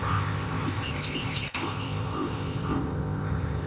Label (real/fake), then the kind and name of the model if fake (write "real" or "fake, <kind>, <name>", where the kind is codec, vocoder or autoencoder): fake, codec, ZipCodec